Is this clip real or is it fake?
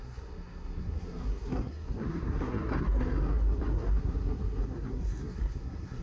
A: fake